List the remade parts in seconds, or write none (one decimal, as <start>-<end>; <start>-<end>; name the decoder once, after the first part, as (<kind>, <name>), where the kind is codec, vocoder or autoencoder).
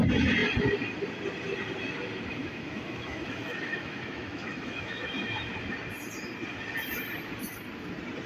2.3-5.5 (autoencoder, DAC-VAE)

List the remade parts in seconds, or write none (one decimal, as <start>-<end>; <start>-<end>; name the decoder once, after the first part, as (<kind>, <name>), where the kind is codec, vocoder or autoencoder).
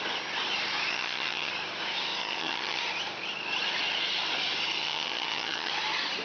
0.9-1.5 (vocoder, HiFi-GAN); 2.2-2.8; 4.8-5.7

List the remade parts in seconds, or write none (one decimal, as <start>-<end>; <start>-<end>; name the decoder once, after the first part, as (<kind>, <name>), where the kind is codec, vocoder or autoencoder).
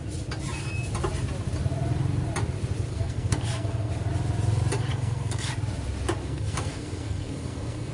2.9-3.9 (codec, SNAC); 4.9-5.5; 6.2-7.9